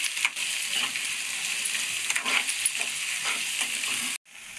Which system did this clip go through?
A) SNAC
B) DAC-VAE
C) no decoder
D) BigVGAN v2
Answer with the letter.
C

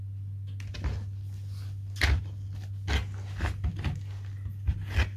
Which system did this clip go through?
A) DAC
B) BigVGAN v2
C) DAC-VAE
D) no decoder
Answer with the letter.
D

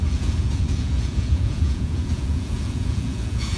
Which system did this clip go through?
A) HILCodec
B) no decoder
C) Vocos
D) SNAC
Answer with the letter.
C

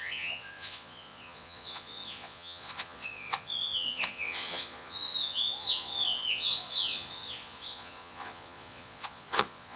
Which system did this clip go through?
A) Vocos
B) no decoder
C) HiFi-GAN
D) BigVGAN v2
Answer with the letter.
A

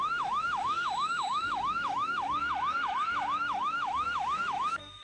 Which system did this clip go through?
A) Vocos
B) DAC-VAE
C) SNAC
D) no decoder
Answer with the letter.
B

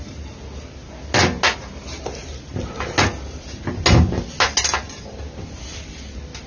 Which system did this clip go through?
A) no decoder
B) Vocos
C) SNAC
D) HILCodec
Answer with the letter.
A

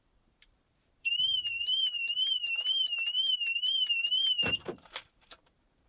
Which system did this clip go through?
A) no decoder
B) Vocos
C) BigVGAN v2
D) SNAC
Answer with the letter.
C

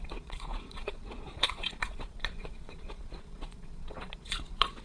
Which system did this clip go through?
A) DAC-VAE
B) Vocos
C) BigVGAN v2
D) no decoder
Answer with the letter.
B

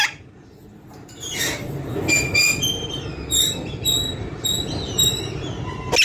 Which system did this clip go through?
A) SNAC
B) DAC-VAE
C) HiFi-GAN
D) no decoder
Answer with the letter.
D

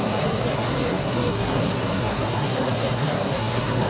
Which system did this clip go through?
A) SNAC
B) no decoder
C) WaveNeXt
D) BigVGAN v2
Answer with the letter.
A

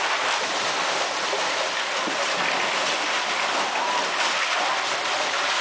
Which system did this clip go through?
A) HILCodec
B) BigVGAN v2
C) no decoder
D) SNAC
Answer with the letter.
B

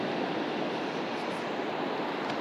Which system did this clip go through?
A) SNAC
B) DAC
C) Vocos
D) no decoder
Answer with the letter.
D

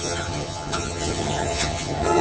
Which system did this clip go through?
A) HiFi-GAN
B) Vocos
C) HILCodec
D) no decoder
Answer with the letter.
A